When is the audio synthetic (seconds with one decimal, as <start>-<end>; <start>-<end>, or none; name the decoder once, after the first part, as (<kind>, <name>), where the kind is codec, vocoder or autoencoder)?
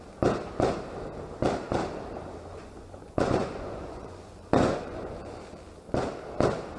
2.5-5.4 (vocoder, Vocos)